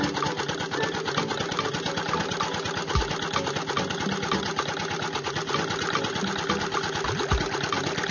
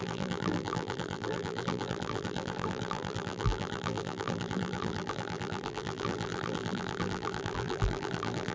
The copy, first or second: second